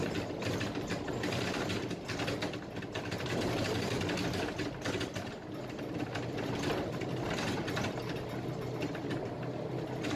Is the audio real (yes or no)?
yes